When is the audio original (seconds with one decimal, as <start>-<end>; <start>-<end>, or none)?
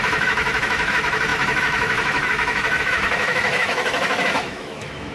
none